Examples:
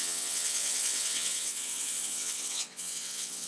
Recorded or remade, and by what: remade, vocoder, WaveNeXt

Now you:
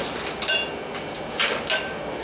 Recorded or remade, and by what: recorded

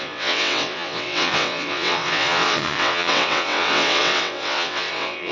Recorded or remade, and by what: remade, vocoder, WaveNeXt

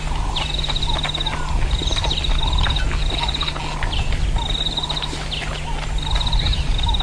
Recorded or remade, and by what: recorded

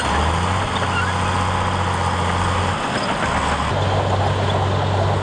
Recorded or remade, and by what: recorded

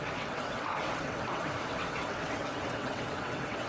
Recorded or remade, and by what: remade, vocoder, WaveNeXt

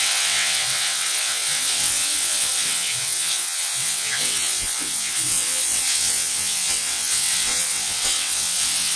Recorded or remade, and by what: remade, vocoder, WaveNeXt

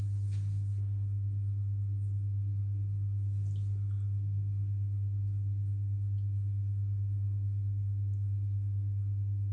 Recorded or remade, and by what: recorded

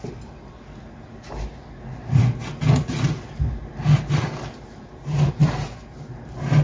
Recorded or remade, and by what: recorded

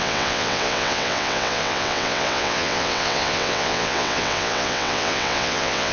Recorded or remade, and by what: remade, vocoder, WaveNeXt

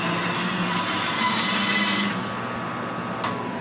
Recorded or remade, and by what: recorded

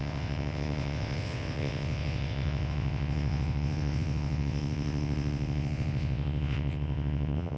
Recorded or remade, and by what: remade, vocoder, WaveNeXt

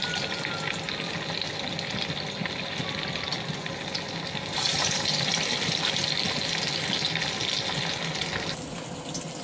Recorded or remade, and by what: recorded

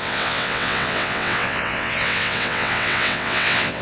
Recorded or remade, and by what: remade, vocoder, WaveNeXt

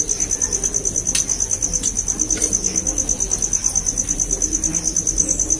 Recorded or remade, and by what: recorded